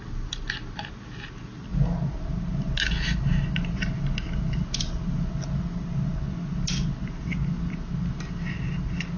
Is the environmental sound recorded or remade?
recorded